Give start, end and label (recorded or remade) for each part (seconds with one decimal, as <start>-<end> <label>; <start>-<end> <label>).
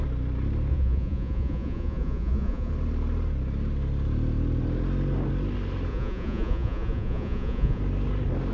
0.0-0.7 recorded; 0.7-2.7 remade; 2.7-5.9 recorded; 5.9-7.8 remade; 7.8-8.5 recorded